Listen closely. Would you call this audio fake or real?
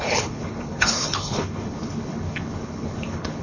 fake